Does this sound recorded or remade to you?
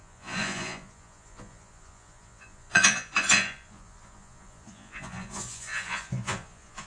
remade